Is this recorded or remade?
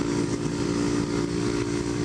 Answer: remade